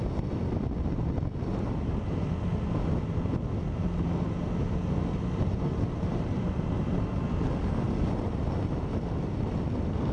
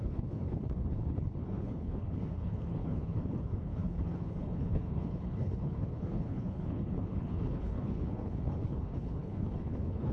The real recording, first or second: first